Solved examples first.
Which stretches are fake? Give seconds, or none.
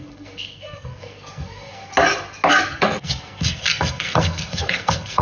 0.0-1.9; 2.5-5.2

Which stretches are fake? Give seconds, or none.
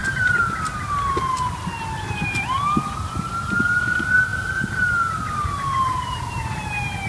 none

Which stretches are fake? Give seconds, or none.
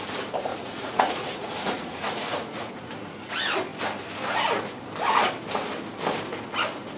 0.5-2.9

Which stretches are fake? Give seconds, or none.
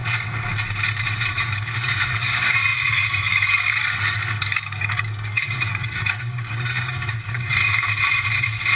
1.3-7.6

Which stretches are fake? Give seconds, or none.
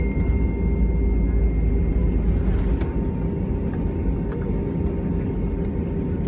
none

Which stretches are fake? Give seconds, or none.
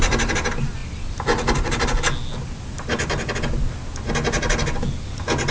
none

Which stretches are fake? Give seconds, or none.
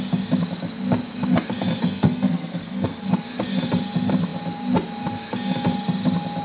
1.8-3.1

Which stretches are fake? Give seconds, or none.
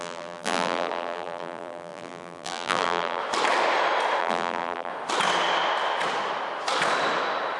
0.0-3.2; 4.2-4.9